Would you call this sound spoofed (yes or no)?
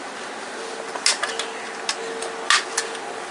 no